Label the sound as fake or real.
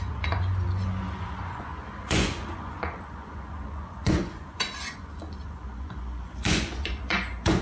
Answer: fake